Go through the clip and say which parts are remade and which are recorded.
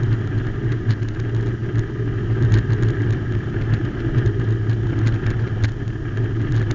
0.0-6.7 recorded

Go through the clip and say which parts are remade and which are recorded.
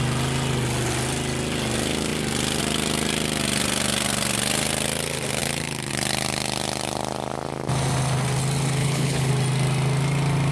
0.0-8.8 recorded; 8.8-9.3 remade; 9.3-10.5 recorded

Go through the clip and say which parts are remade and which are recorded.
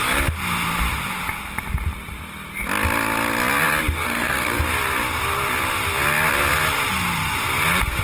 0.0-4.0 recorded; 4.0-4.6 remade; 4.6-8.0 recorded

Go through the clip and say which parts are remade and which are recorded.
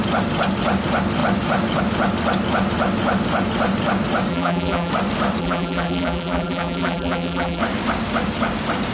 0.0-4.3 recorded; 4.3-4.9 remade; 4.9-5.4 recorded; 5.4-7.6 remade; 7.6-8.9 recorded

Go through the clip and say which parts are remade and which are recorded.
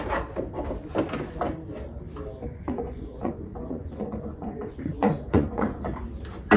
0.0-2.5 recorded; 2.5-5.8 remade; 5.8-6.6 recorded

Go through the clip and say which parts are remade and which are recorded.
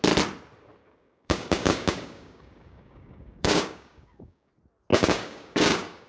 0.0-0.8 recorded; 0.8-4.5 remade; 4.5-4.9 recorded; 4.9-6.1 remade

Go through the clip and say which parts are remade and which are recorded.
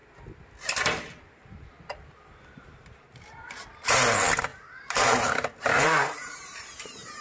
0.0-2.6 recorded; 2.6-7.2 remade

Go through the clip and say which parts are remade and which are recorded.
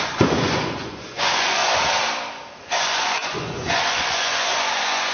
0.0-1.6 remade; 1.6-2.8 recorded; 2.8-5.1 remade